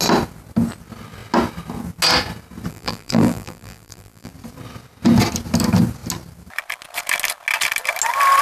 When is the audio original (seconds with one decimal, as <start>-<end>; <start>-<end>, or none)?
0.0-2.7; 4.3-8.4